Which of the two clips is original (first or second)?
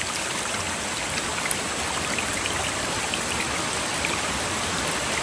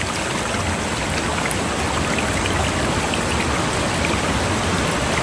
second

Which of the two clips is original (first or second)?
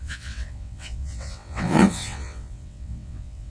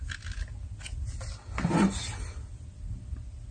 second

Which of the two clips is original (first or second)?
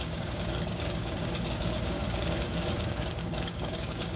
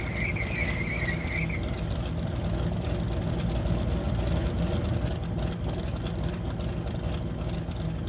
second